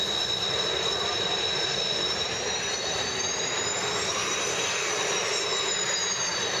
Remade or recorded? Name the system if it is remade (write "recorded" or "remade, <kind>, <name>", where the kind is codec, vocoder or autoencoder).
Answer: recorded